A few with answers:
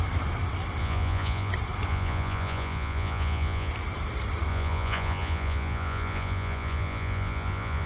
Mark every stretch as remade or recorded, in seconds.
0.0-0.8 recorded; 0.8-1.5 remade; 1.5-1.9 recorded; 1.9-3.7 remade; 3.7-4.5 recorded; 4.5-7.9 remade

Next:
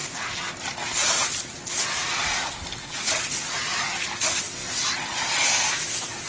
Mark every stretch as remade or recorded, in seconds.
0.0-6.3 recorded

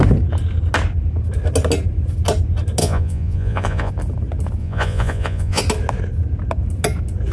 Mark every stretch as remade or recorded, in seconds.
0.0-2.8 recorded; 2.8-3.9 remade; 3.9-4.6 recorded; 4.6-5.6 remade; 5.6-7.3 recorded

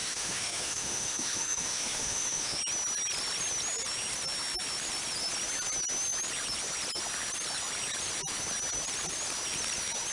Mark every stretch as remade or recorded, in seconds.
0.0-2.6 remade; 2.6-10.1 recorded

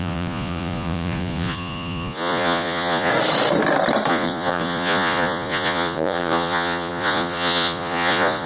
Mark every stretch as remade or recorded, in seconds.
0.0-3.1 remade; 3.1-4.1 recorded; 4.1-8.5 remade

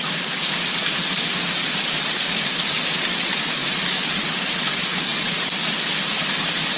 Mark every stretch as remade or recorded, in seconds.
0.0-3.6 recorded; 3.6-4.5 remade; 4.5-6.8 recorded